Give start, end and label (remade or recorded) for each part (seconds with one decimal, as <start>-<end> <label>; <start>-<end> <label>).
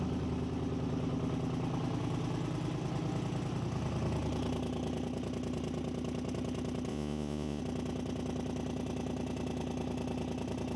0.0-6.9 recorded; 6.9-7.6 remade; 7.6-10.8 recorded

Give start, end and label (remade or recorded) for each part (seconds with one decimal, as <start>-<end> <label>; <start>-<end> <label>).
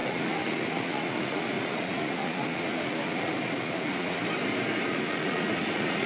0.0-4.2 remade; 4.2-4.9 recorded; 4.9-6.1 remade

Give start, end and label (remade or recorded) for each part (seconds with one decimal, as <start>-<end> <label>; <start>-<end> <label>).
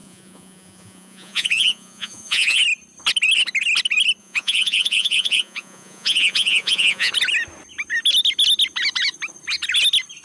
0.0-2.6 remade; 2.6-4.2 recorded; 4.2-7.1 remade; 7.1-10.2 recorded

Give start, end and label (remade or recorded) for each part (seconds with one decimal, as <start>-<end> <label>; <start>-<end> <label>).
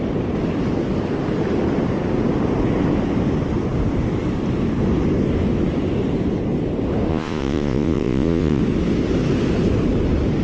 0.0-7.1 recorded; 7.1-8.6 remade; 8.6-10.4 recorded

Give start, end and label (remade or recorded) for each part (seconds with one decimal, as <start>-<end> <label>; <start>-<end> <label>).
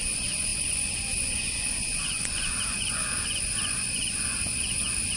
0.0-5.2 remade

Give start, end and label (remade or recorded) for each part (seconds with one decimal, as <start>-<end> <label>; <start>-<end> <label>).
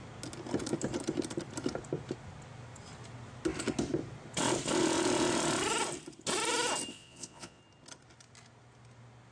0.0-6.9 recorded; 6.9-7.6 remade; 7.6-9.3 recorded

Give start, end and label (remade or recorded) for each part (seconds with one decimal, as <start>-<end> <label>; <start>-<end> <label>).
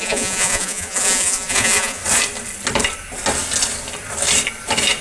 0.0-2.0 remade; 2.0-5.0 recorded